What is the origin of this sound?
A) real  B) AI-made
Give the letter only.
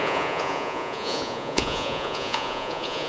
B